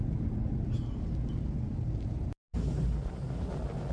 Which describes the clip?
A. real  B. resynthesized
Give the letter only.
A